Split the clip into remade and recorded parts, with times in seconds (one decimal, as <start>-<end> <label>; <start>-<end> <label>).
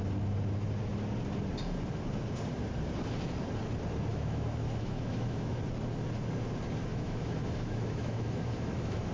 0.0-4.1 recorded; 4.1-5.6 remade; 5.6-6.9 recorded; 6.9-9.1 remade